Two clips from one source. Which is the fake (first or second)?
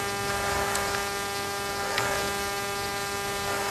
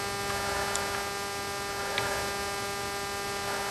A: first